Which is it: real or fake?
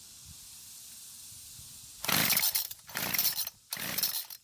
real